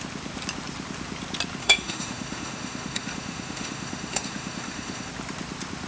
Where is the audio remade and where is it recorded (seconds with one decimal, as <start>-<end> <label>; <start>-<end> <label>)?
0.0-1.6 recorded; 1.6-5.1 remade; 5.1-5.9 recorded